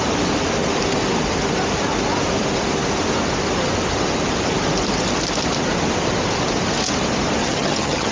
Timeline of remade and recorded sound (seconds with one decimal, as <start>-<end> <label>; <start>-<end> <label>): 0.0-7.4 recorded; 7.4-8.1 remade